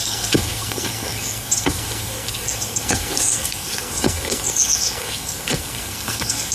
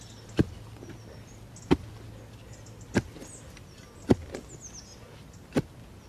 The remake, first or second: first